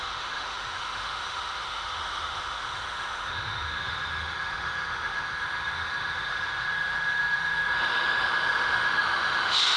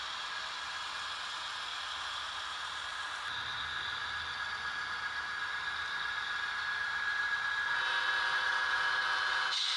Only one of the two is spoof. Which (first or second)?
first